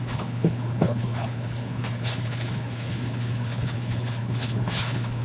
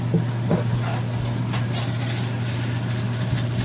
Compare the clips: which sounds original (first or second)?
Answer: second